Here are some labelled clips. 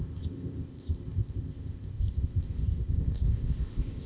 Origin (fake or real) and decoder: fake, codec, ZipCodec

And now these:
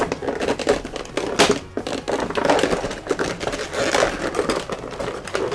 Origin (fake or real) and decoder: real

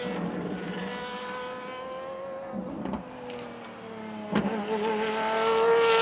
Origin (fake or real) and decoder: real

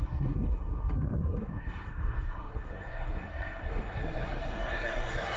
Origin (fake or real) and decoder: fake, codec, SNAC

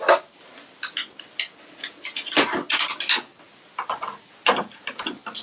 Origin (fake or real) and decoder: real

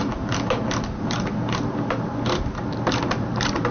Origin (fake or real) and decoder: real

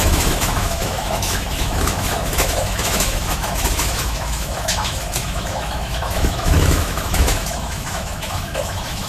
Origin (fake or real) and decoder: fake, autoencoder, DAC-VAE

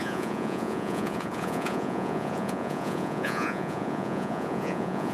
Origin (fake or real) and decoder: fake, vocoder, Vocos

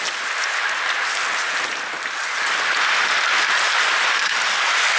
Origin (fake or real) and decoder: real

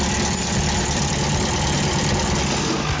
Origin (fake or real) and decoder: real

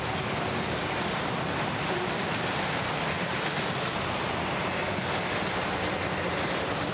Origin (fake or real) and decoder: real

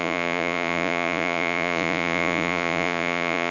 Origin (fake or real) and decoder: fake, vocoder, Vocos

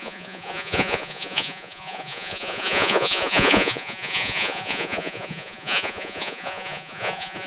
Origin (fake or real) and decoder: fake, vocoder, Vocos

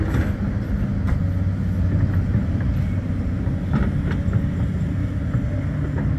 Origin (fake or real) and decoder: real